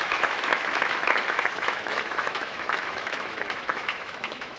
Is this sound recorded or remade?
remade